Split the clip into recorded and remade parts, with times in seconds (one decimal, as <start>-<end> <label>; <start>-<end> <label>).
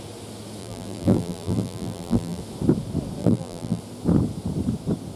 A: 0.0-0.6 recorded; 0.6-2.4 remade; 2.4-3.2 recorded; 3.2-3.8 remade; 3.8-5.2 recorded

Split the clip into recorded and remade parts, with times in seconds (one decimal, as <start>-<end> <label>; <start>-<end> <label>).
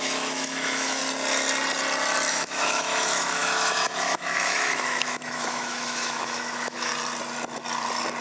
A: 0.0-1.0 remade; 1.0-2.3 recorded; 2.3-6.9 remade; 6.9-8.2 recorded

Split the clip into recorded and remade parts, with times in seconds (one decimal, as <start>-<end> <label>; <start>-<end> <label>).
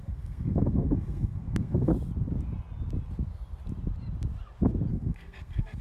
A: 0.0-1.9 remade; 1.9-4.9 recorded; 4.9-5.8 remade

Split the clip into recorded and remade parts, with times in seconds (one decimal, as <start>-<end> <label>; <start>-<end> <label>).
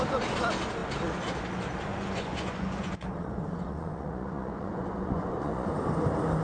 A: 0.0-1.9 recorded; 1.9-5.7 remade; 5.7-6.4 recorded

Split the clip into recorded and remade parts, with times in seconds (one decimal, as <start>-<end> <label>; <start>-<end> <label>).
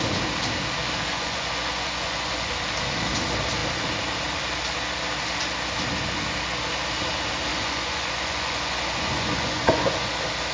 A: 0.0-1.1 recorded; 1.1-2.5 remade; 2.5-7.5 recorded; 7.5-10.1 remade; 10.1-10.5 recorded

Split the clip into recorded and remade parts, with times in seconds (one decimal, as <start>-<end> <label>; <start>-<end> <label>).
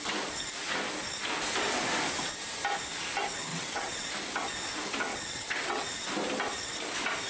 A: 0.0-3.5 recorded; 3.5-4.1 remade; 4.1-5.1 recorded; 5.1-5.9 remade; 5.9-7.3 recorded